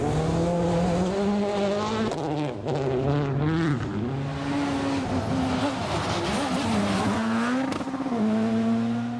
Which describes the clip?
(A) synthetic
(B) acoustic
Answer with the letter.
B